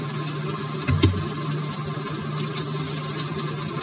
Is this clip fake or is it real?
real